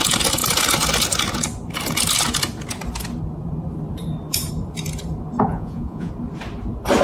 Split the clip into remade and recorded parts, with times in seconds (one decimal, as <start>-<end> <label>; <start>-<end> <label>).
0.0-5.5 recorded; 5.5-6.1 remade; 6.1-7.0 recorded